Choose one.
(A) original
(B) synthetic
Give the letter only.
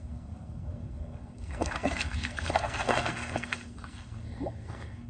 B